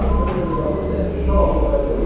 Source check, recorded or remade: recorded